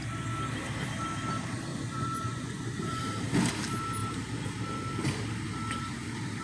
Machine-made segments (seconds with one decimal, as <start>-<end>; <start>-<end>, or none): 1.7-3.0